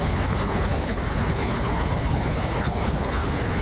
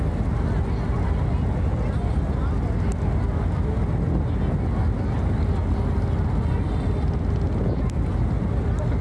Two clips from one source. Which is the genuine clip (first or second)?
second